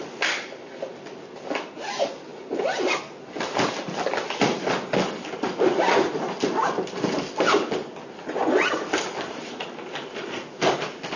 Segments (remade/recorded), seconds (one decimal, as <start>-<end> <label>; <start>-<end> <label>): 0.0-11.2 recorded